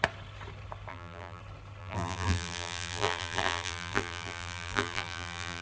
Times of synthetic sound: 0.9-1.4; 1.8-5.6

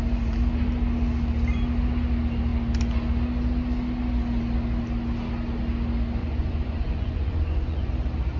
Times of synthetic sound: 6.2-7.9

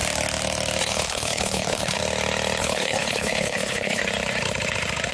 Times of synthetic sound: 0.8-2.0; 2.6-4.0

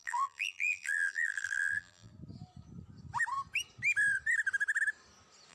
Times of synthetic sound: 0.0-2.1

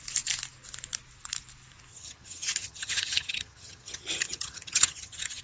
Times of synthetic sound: 1.9-5.4

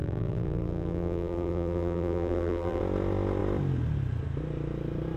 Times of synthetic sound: 0.0-2.8

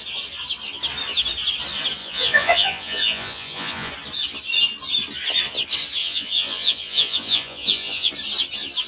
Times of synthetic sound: 2.0-3.9; 6.0-8.1

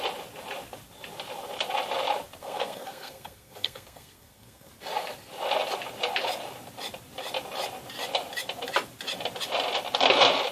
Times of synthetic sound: 2.4-4.7